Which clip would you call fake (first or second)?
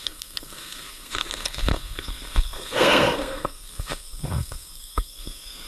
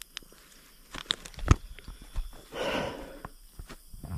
first